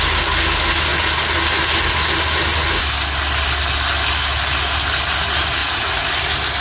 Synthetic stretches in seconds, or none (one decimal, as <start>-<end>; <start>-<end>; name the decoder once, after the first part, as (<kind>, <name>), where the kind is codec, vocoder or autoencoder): 5.6-6.1 (vocoder, Vocos)